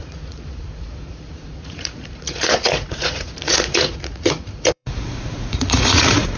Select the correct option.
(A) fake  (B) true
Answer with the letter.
A